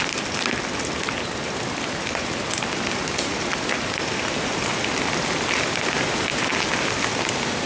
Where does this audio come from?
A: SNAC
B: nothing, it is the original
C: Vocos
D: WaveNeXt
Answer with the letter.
B